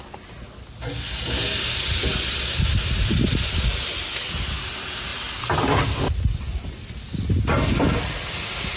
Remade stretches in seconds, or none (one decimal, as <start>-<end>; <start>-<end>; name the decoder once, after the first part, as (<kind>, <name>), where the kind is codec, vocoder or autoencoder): none